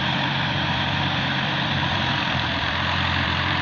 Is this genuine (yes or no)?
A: no